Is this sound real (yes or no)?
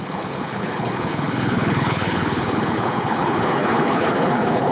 no